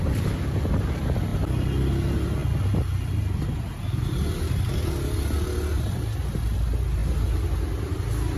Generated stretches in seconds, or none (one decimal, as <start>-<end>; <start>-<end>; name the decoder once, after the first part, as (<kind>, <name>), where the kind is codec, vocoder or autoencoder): none